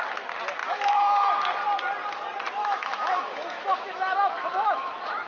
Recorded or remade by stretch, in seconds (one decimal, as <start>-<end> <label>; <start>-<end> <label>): 0.0-0.6 recorded; 0.6-1.3 remade; 1.3-2.6 recorded; 2.6-5.3 remade